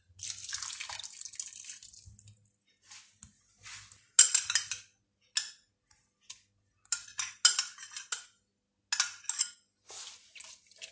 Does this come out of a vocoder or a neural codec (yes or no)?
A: no